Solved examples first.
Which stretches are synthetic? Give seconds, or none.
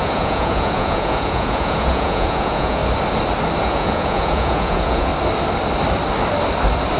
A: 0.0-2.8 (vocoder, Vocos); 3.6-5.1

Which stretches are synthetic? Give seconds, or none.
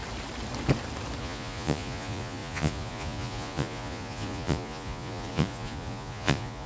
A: 1.2-6.7 (vocoder, Vocos)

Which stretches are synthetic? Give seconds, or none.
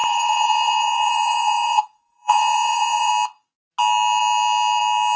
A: 0.0-3.1 (vocoder, Vocos)